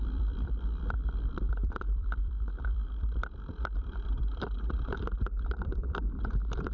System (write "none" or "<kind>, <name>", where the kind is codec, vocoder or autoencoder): vocoder, BigVGAN v2